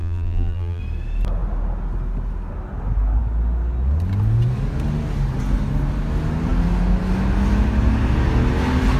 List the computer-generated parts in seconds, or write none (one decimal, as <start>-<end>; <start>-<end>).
0.0-0.8